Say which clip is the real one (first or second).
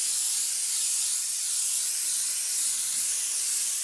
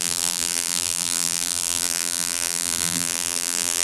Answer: first